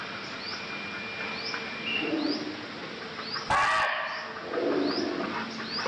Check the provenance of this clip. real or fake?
real